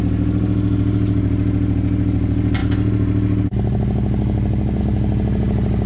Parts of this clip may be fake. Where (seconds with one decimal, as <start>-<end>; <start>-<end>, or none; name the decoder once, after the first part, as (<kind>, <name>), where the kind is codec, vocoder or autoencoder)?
none

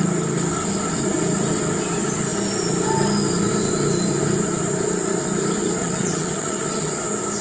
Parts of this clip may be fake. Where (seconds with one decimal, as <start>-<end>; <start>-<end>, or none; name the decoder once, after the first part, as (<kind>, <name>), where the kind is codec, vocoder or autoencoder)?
5.8-6.9 (vocoder, Vocos)

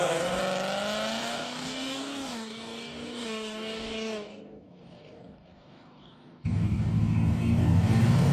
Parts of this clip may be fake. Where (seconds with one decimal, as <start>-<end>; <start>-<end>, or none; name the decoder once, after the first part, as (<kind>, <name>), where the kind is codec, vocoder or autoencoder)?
0.0-0.4 (codec, DAC); 1.2-8.3

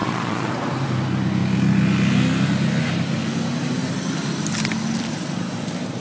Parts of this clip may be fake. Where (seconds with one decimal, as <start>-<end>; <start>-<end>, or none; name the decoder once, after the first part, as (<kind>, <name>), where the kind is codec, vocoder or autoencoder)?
0.0-0.5 (vocoder, Vocos)

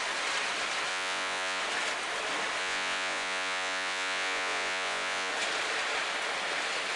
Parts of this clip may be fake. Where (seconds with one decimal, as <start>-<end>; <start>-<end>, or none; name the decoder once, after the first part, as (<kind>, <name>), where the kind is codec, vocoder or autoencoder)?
0.9-1.6 (vocoder, Vocos); 2.6-5.3

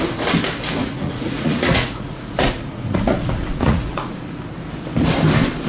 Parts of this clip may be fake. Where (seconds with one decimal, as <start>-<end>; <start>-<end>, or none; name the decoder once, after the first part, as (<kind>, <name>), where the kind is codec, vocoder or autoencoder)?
0.8-4.2 (vocoder, Vocos)

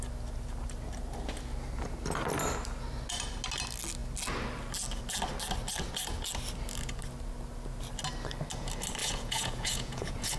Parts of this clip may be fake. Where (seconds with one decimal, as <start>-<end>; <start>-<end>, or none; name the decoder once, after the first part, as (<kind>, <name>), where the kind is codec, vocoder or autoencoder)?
9.0-10.4 (vocoder, Vocos)